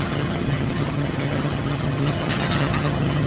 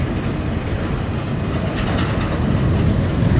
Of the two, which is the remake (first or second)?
first